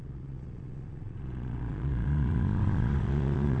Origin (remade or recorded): remade